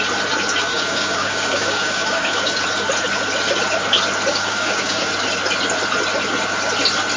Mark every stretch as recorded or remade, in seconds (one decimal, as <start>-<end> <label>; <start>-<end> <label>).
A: 0.0-0.6 recorded; 0.6-2.6 remade; 2.6-4.3 recorded; 4.3-5.1 remade; 5.1-7.2 recorded